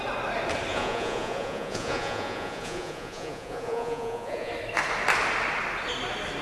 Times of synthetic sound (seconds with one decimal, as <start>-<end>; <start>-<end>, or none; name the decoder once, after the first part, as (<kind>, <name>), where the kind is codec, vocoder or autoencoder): 0.7-4.5 (vocoder, Vocos)